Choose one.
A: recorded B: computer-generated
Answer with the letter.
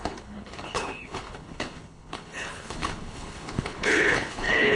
B